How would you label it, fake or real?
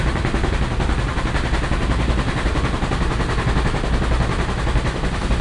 real